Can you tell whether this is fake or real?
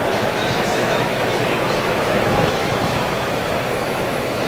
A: fake